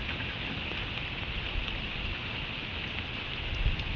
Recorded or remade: recorded